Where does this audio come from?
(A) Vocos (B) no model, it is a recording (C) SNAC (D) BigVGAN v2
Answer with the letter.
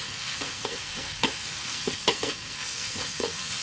C